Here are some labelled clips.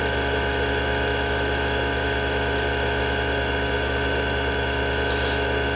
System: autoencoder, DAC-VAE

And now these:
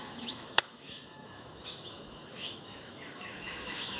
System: autoencoder, DAC-VAE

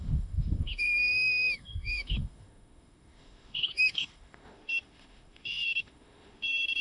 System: autoencoder, DAC-VAE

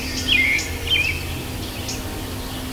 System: none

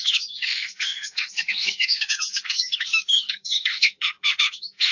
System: autoencoder, DAC-VAE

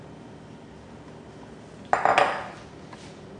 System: none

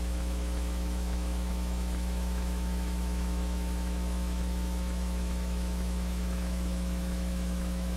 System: autoencoder, DAC-VAE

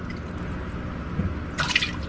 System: none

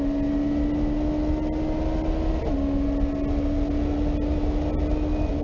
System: none